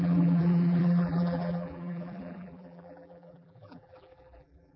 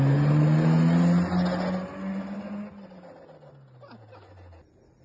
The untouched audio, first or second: second